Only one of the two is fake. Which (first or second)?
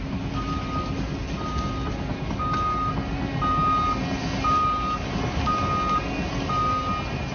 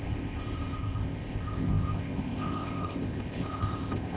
second